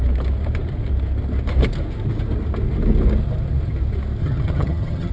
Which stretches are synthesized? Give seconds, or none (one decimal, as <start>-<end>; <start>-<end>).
4.2-5.1